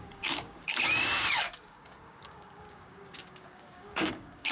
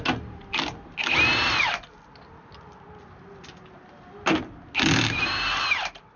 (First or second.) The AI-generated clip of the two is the first